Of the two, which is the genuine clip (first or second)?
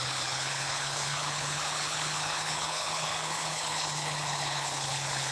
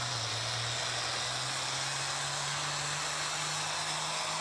second